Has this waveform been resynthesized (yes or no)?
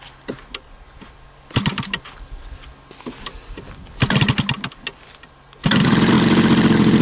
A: no